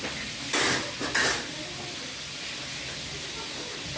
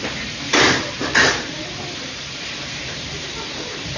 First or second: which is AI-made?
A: second